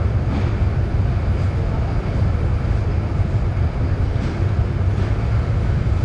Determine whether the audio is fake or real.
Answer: fake